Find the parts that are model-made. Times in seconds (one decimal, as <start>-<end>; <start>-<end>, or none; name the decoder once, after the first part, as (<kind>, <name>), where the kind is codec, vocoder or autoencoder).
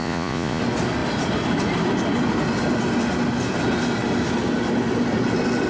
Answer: 0.0-0.6 (vocoder, Vocos)